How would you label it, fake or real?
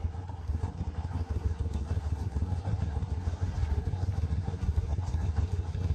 fake